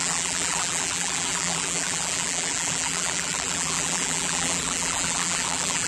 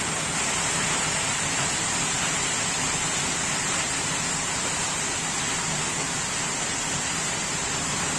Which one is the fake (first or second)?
first